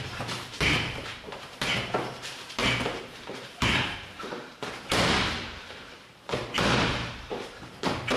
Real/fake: fake